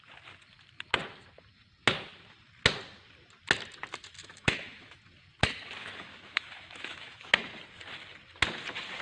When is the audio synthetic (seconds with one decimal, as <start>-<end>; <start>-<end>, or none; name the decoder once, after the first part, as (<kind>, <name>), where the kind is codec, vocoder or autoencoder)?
4.2-5.0 (autoencoder, DAC-VAE); 5.8-7.2